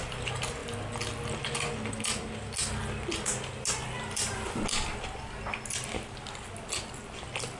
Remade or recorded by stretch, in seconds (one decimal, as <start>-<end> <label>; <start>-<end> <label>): 0.0-7.6 recorded